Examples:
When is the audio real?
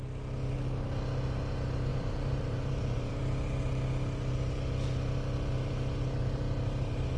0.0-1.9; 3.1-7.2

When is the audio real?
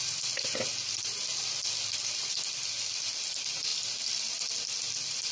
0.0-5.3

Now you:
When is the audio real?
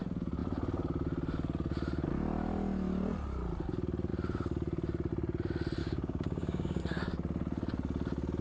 0.0-5.8; 6.8-8.4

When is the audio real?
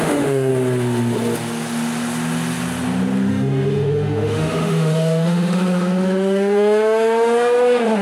0.5-3.3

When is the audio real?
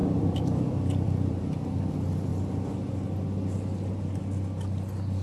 1.5-5.2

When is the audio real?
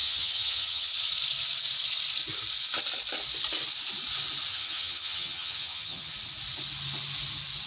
0.9-4.5; 6.1-7.7